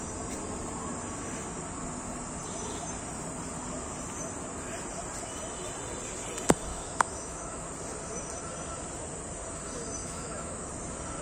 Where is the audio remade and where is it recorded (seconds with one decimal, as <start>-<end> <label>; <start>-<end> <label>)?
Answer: 0.0-6.7 recorded; 6.7-7.7 remade; 7.7-10.0 recorded; 10.0-10.7 remade; 10.7-11.2 recorded